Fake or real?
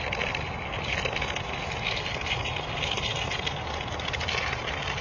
real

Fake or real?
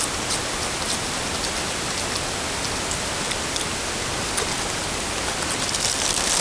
real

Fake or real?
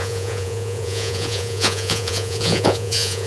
fake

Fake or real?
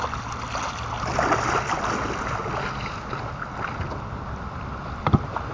real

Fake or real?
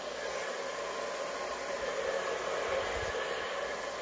real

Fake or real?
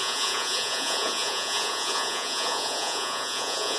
fake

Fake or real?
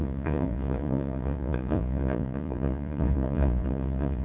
fake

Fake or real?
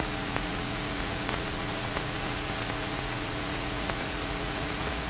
fake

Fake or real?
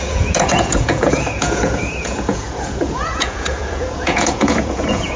fake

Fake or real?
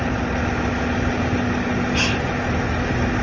real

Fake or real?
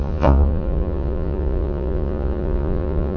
fake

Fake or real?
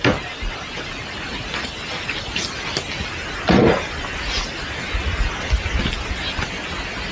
real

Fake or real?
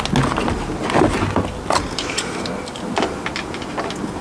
real